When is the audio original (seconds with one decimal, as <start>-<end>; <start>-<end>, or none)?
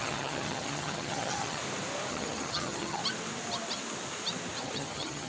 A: 1.6-2.1; 3.0-4.6